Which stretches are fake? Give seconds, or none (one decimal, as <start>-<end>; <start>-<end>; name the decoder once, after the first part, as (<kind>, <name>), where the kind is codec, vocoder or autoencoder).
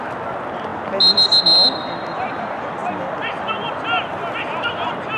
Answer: none